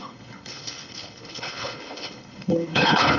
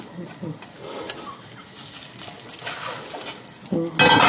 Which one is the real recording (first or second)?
second